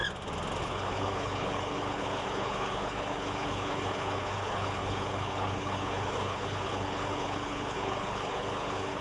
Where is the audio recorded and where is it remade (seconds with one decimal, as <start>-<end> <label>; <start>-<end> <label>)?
0.0-0.6 recorded; 0.6-9.0 remade